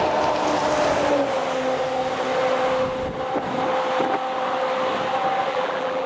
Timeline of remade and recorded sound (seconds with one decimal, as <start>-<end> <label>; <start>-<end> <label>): 0.0-5.5 recorded; 5.5-6.1 remade